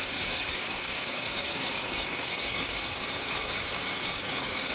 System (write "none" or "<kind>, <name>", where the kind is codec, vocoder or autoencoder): codec, DAC